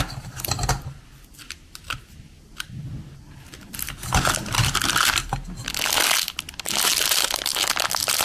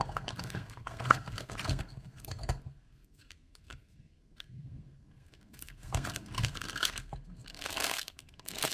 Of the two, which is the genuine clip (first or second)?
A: first